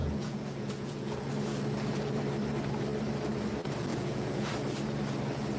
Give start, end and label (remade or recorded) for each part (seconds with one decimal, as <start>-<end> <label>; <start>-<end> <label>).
0.0-1.3 remade; 1.3-3.9 recorded; 3.9-4.5 remade; 4.5-5.6 recorded